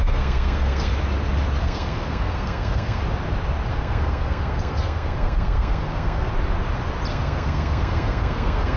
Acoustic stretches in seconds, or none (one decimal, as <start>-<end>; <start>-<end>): 0.9-1.6; 3.0-3.7; 6.3-7.1